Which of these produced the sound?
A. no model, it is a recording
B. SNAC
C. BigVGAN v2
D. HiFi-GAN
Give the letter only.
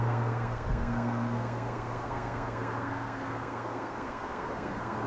B